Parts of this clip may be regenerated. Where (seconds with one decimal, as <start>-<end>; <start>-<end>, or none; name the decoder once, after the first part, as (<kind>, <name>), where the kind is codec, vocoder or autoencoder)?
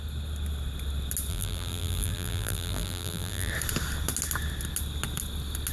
1.3-3.5 (vocoder, BigVGAN v2)